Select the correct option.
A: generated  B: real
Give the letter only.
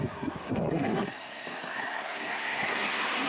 A